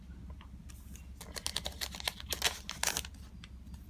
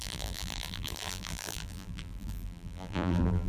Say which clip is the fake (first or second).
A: second